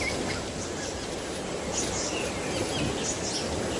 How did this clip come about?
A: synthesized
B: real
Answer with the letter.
B